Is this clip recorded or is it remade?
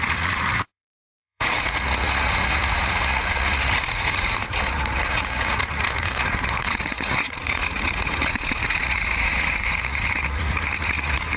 remade